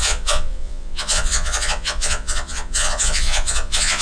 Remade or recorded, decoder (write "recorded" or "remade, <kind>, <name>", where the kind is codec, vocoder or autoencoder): remade, vocoder, Vocos